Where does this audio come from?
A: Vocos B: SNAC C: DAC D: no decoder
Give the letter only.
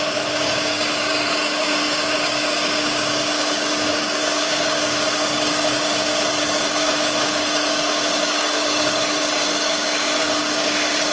C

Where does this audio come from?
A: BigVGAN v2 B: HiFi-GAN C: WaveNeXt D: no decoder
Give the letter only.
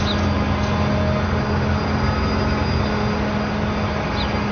D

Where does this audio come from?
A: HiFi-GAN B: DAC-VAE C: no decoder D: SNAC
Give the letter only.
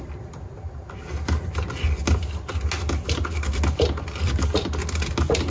C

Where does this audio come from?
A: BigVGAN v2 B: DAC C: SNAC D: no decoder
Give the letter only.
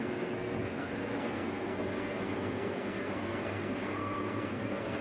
C